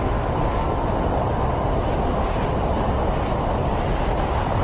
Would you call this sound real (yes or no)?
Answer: yes